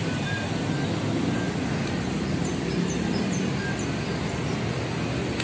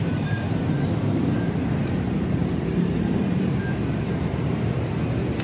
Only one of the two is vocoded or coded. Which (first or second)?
second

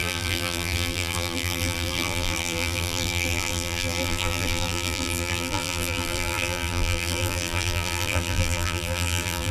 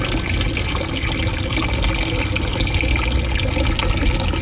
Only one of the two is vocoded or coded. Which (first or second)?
first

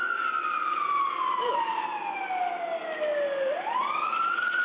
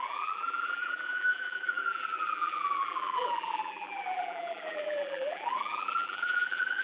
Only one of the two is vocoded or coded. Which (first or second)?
second